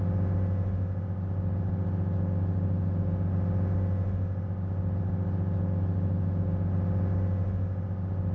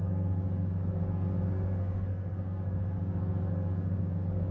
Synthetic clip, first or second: second